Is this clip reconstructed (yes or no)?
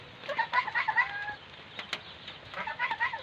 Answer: no